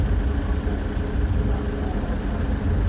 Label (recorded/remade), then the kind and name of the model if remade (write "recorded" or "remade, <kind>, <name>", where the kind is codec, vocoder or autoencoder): recorded